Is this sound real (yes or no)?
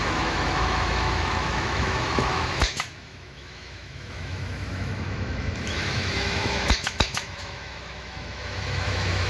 no